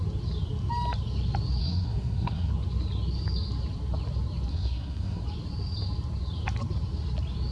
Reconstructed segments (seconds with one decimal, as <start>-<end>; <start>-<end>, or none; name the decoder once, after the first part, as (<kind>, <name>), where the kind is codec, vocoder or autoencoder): 1.6-2.5 (codec, SNAC); 4.5-5.2